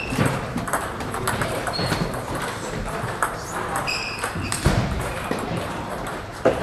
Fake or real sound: fake